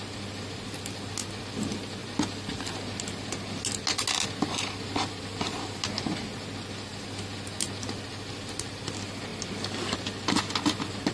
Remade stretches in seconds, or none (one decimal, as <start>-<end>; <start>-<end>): none